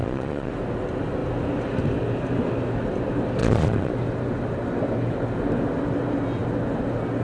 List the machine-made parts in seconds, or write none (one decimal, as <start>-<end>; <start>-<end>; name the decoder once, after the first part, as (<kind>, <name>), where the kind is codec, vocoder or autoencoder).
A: 0.0-0.5 (vocoder, Vocos); 3.4-3.9